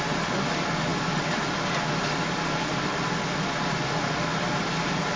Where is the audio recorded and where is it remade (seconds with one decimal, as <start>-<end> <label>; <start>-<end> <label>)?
0.0-5.2 recorded